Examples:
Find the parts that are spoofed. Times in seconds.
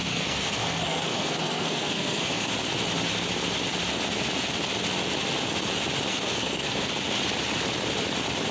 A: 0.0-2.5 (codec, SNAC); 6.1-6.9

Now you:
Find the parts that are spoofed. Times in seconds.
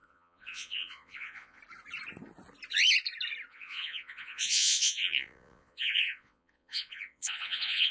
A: 0.0-1.6 (vocoder, Vocos); 3.5-7.9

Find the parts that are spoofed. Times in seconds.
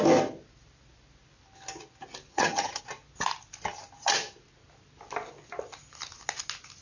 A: 2.3-2.8 (vocoder, HiFi-GAN)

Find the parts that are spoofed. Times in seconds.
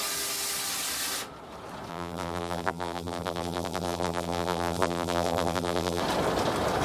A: 1.9-6.0 (vocoder, BigVGAN v2)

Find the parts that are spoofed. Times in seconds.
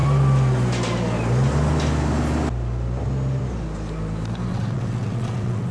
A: 4.5-5.7 (vocoder, WaveNeXt)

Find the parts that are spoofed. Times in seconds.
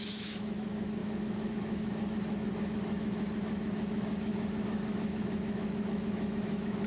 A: 0.0-6.9 (autoencoder, DAC-VAE)